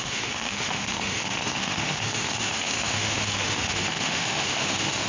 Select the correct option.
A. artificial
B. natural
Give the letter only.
A